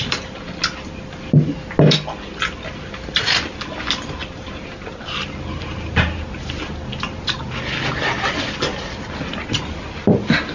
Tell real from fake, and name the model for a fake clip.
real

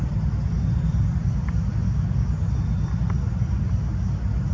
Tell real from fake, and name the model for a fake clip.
real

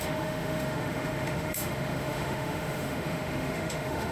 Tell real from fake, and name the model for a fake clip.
fake, autoencoder, DAC-VAE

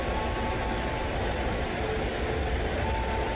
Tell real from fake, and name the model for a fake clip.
real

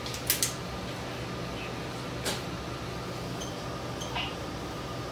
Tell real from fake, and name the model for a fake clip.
real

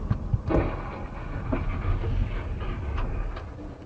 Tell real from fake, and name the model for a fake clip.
real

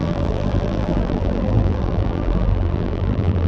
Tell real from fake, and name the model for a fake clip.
fake, vocoder, BigVGAN v2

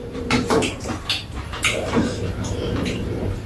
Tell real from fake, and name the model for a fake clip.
fake, vocoder, BigVGAN v2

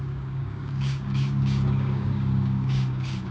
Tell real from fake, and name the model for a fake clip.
fake, codec, DAC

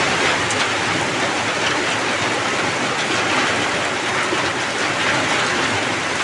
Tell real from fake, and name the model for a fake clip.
real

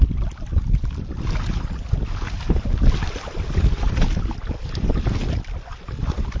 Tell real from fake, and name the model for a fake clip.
real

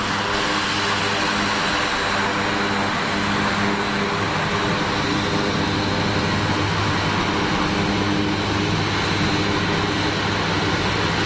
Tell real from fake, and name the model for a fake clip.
real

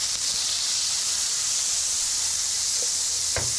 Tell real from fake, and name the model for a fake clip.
real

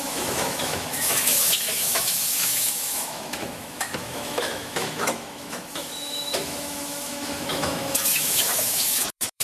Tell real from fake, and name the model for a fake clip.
fake, autoencoder, DAC-VAE